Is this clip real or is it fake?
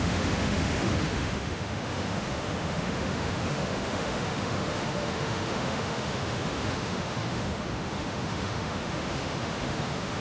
fake